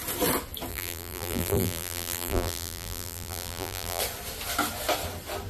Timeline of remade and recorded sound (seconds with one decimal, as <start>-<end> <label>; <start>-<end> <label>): 0.0-0.7 recorded; 0.7-4.0 remade; 4.0-5.5 recorded

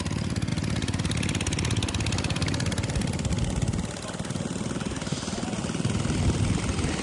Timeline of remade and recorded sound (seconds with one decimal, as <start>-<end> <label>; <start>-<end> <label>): 0.0-0.5 recorded; 0.5-3.3 remade; 3.3-5.6 recorded; 5.6-6.6 remade; 6.6-7.0 recorded

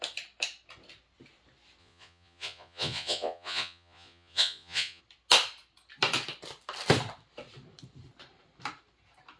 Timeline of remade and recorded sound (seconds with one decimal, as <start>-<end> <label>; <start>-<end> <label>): 0.0-1.8 recorded; 1.8-5.0 remade; 5.0-9.4 recorded

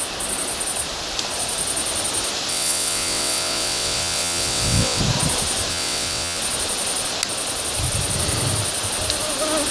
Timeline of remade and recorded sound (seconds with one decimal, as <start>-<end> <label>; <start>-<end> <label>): 0.0-2.5 recorded; 2.5-5.0 remade; 5.0-5.7 recorded; 5.7-6.4 remade; 6.4-9.7 recorded